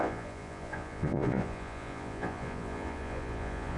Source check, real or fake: fake